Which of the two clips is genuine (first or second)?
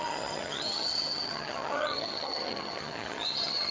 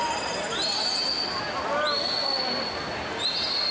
second